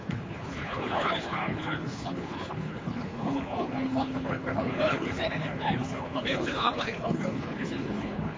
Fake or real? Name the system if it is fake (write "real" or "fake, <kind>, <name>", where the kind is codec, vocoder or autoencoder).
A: fake, codec, HILCodec